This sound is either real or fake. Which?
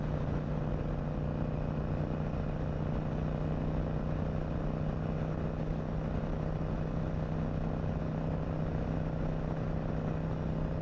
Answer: real